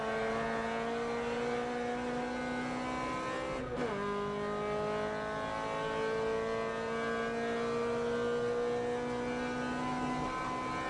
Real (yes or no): yes